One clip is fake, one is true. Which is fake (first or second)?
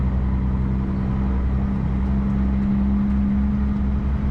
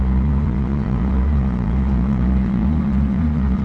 second